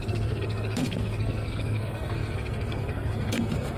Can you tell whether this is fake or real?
fake